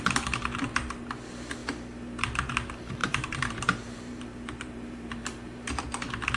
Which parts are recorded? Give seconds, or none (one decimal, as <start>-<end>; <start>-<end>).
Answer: 0.0-3.0; 5.8-6.4